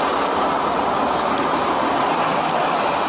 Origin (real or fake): real